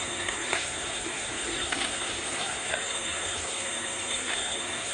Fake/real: fake